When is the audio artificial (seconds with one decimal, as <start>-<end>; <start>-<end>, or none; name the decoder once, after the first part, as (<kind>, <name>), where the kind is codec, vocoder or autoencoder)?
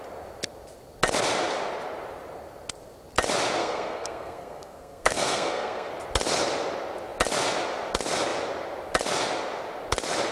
3.6-5.9 (codec, SNAC)